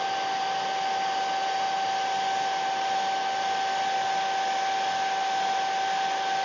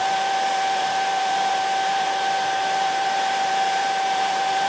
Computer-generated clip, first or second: second